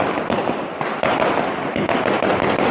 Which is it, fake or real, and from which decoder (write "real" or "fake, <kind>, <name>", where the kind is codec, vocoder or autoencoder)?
real